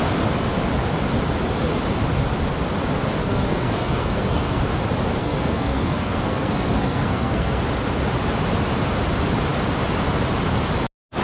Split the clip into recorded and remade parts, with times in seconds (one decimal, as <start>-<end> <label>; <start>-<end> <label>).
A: 0.0-3.2 recorded; 3.2-4.6 remade; 4.6-5.2 recorded; 5.2-7.6 remade; 7.6-11.2 recorded